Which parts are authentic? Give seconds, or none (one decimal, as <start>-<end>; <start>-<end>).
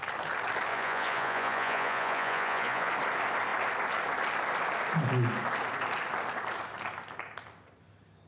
0.0-0.7; 2.9-8.3